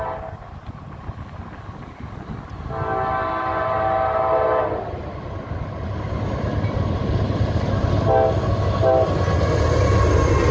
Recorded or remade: recorded